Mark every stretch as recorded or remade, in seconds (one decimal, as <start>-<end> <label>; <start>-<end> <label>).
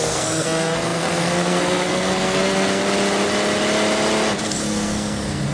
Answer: 0.0-2.8 remade; 2.8-4.4 recorded; 4.4-5.5 remade